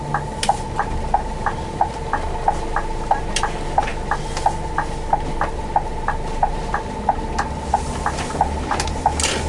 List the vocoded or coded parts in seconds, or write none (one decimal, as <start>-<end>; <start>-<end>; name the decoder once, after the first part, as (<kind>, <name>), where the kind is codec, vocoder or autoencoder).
none